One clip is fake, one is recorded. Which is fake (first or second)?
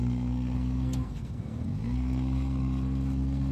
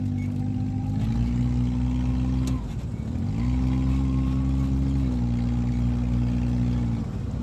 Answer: first